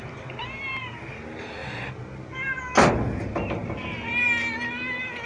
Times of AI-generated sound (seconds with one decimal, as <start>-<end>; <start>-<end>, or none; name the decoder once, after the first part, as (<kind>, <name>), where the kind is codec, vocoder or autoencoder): none